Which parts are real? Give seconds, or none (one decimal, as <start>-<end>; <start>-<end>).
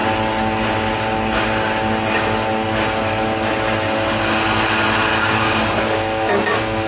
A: 0.0-5.1